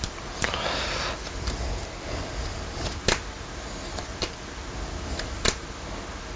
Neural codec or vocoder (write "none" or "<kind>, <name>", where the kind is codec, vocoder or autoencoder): none